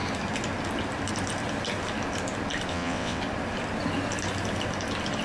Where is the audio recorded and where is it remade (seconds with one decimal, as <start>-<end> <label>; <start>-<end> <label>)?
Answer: 0.0-2.7 recorded; 2.7-3.2 remade; 3.2-5.2 recorded